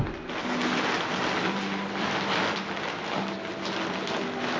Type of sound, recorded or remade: recorded